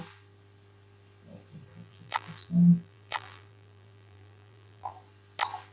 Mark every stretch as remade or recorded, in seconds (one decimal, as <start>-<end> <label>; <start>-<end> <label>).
0.0-1.7 recorded; 1.7-4.9 remade; 4.9-5.7 recorded

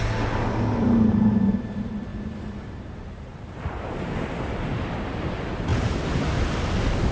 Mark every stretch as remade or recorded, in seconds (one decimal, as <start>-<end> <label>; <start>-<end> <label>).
0.0-2.1 recorded; 2.1-3.9 remade; 3.9-5.7 recorded; 5.7-6.5 remade; 6.5-7.1 recorded

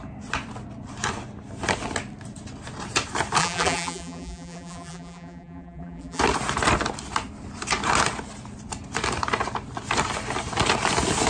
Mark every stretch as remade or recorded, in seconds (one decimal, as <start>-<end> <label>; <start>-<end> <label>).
0.0-3.4 recorded; 3.4-6.2 remade; 6.2-11.3 recorded

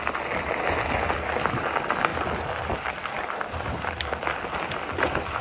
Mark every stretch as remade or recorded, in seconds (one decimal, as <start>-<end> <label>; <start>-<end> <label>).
0.0-2.1 recorded; 2.1-5.4 remade

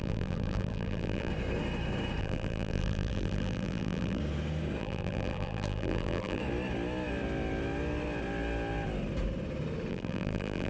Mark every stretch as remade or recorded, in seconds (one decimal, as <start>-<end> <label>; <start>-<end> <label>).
0.0-1.3 remade; 1.3-2.2 recorded; 2.2-4.2 remade; 4.2-4.8 recorded; 4.8-6.4 remade; 6.4-9.9 recorded; 9.9-10.7 remade

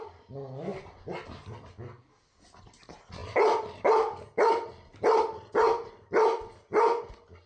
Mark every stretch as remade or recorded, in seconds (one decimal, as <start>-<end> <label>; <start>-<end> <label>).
0.0-7.5 recorded

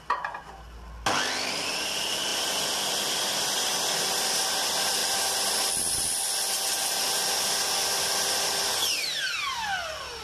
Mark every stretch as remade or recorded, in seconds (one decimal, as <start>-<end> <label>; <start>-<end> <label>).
0.0-10.2 recorded

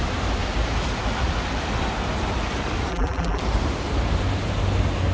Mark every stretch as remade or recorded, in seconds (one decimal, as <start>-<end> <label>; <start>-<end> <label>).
0.0-2.9 recorded; 2.9-3.4 remade; 3.4-5.1 recorded